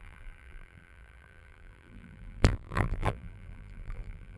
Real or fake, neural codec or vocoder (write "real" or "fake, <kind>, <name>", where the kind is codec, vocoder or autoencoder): fake, vocoder, BigVGAN v2